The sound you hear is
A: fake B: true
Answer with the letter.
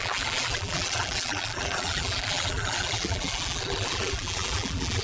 A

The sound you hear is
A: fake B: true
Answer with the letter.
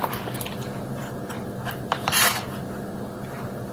A